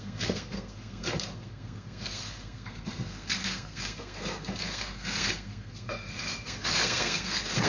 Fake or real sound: fake